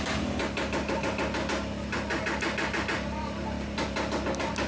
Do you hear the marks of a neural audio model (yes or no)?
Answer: no